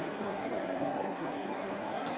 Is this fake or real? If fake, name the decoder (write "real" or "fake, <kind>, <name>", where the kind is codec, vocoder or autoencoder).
fake, codec, SNAC